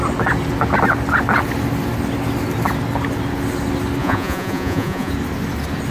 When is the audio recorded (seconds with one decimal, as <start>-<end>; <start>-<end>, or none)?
0.0-4.0; 5.1-5.9